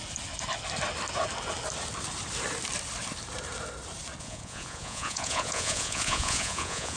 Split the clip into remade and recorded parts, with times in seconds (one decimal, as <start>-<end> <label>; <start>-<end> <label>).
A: 0.0-4.2 recorded; 4.2-7.0 remade